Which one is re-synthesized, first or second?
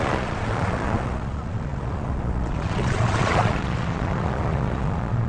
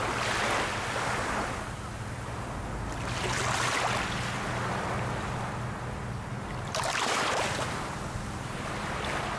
first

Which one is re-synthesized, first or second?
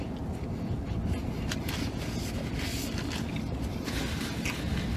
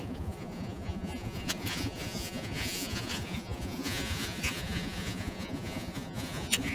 second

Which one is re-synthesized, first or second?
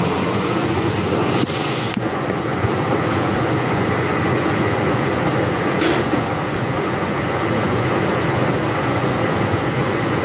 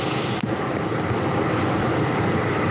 first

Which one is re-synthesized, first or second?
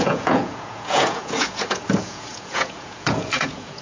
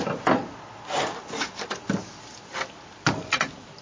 first